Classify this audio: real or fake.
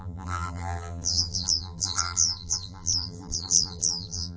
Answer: fake